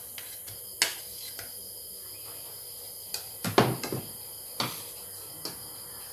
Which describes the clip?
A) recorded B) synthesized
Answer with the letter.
A